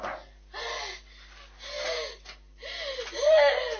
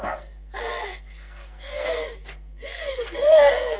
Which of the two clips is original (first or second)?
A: first